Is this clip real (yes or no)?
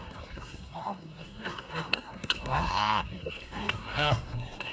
no